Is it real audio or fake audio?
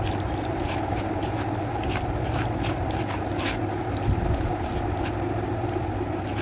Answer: real